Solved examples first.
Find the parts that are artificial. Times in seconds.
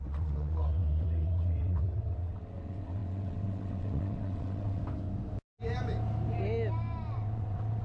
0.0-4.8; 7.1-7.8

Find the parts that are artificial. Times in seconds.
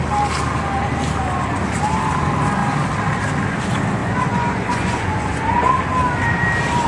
4.0-5.8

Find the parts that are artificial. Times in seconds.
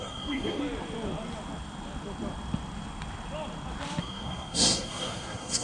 0.0-0.6; 4.0-5.6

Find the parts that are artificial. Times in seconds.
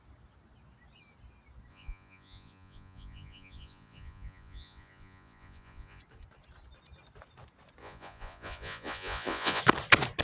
1.7-6.0; 7.8-9.6